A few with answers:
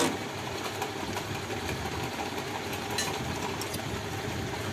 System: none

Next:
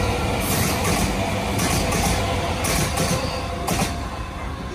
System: none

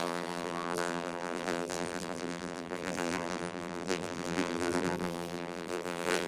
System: vocoder, BigVGAN v2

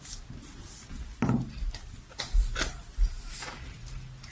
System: none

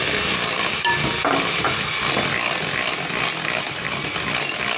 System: vocoder, BigVGAN v2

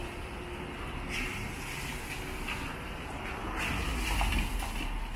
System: none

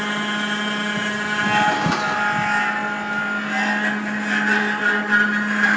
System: none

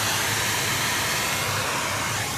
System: none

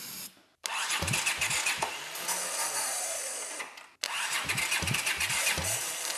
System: none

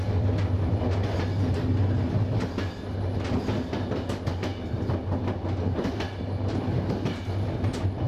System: none